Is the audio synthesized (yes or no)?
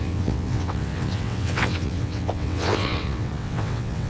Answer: yes